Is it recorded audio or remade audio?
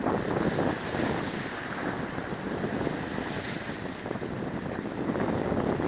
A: recorded